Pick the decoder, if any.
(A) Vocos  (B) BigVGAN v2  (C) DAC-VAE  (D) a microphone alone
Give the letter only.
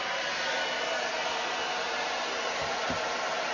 D